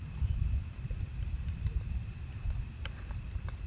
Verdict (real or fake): real